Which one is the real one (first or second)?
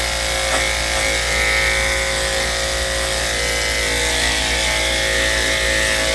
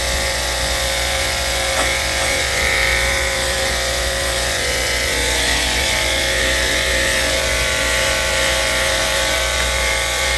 first